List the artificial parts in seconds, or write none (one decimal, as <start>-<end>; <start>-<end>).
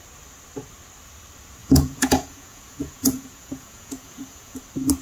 1.6-4.6